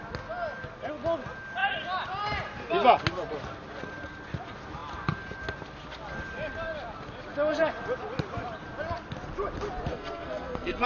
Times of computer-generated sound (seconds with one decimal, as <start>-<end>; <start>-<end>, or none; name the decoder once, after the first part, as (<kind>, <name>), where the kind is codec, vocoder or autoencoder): 9.9-10.9 (codec, SNAC)